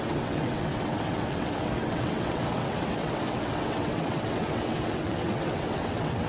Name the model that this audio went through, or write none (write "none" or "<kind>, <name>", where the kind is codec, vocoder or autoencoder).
vocoder, WaveNeXt